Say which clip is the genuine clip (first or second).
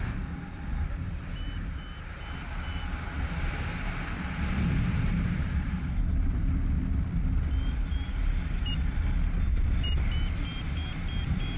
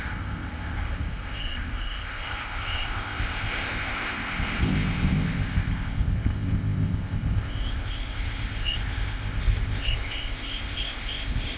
first